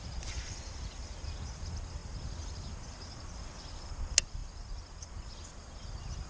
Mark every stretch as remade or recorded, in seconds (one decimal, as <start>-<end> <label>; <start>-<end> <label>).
0.0-6.3 recorded